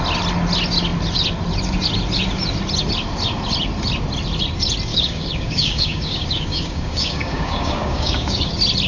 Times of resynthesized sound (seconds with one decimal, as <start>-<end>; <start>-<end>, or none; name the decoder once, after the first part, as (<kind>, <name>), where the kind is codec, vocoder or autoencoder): 4.9-8.5 (codec, DAC)